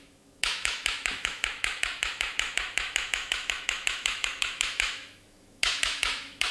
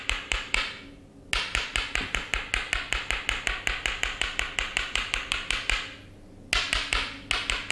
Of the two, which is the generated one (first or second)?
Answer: first